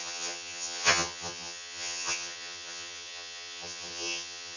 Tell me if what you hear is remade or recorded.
remade